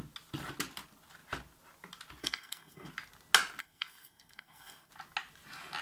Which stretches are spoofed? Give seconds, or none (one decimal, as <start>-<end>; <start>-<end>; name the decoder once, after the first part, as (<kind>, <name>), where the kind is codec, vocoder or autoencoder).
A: 2.2-2.9 (codec, SNAC); 3.6-4.9

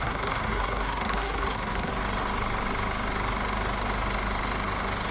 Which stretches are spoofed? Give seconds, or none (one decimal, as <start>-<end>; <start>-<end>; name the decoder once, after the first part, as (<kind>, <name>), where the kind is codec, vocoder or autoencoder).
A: 0.0-1.9 (codec, SNAC)

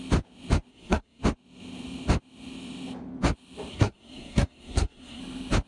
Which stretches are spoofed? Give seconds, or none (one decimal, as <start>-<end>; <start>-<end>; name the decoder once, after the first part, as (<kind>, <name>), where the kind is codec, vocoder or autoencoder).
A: 0.7-1.2 (codec, SNAC); 3.7-5.2

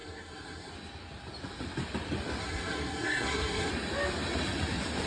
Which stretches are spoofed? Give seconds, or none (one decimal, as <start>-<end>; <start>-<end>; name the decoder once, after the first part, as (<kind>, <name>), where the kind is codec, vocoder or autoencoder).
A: 0.0-0.7 (codec, SNAC); 2.4-3.7

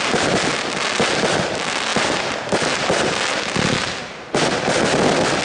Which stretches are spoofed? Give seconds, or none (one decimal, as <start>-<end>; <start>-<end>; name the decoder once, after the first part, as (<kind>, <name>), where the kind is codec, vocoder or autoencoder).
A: none

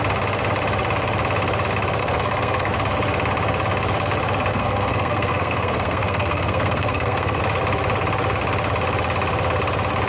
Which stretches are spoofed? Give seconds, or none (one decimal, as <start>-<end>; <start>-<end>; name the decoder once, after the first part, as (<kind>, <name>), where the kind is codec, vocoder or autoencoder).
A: 2.0-2.7 (codec, SNAC); 4.5-7.4

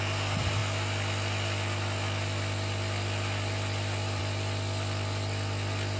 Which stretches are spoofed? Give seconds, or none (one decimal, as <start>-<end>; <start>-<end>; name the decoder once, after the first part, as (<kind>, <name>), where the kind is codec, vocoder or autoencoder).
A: none

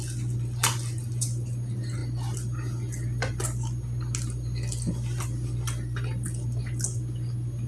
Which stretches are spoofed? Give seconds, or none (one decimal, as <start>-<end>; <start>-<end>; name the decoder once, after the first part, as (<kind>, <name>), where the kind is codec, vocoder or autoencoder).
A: none